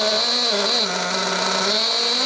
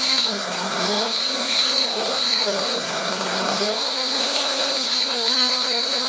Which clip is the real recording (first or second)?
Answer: first